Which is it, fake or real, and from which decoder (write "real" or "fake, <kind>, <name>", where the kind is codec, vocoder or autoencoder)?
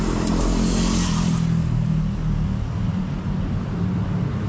real